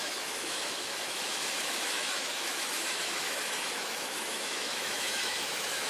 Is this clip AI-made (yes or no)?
yes